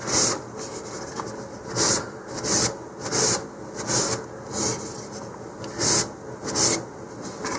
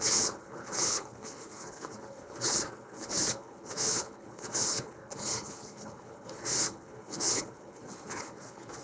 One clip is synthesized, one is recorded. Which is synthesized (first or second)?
second